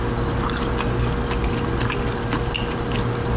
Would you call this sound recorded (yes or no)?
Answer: yes